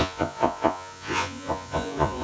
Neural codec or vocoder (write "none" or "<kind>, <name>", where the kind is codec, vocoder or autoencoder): vocoder, Vocos